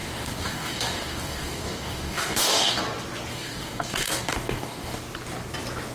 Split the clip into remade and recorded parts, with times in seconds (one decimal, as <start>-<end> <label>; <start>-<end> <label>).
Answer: 0.0-2.8 remade; 2.8-3.3 recorded; 3.3-5.0 remade; 5.0-5.9 recorded